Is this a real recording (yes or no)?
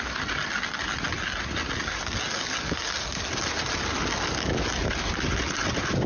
yes